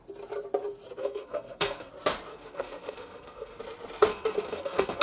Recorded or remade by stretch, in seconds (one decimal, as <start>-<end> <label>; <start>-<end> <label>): 0.0-1.0 recorded; 1.0-1.9 remade; 1.9-2.3 recorded; 2.3-3.6 remade; 3.6-4.1 recorded; 4.1-5.0 remade